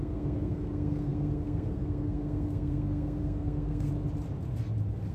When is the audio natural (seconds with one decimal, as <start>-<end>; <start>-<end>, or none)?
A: 3.9-5.1